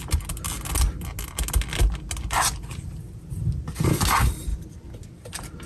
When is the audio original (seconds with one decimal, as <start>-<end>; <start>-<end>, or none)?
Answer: 0.0-2.9; 3.5-5.7